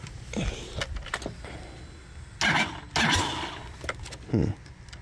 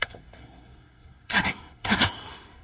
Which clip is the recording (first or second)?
first